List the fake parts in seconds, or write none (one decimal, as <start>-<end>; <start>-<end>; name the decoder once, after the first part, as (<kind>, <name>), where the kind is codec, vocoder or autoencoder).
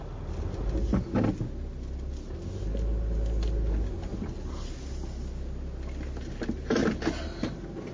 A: none